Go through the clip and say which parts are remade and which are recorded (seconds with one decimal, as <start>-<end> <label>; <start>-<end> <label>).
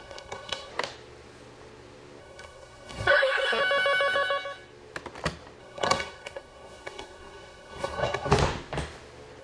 0.0-0.7 remade; 0.7-2.2 recorded; 2.2-3.6 remade; 3.6-5.6 recorded; 5.6-8.3 remade; 8.3-9.4 recorded